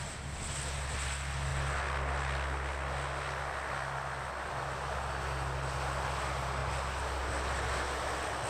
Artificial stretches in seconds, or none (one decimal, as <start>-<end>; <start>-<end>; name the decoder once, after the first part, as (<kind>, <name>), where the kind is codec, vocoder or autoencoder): none